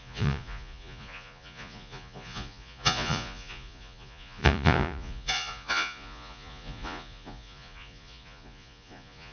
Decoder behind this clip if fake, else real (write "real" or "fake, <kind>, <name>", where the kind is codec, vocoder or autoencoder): fake, vocoder, Vocos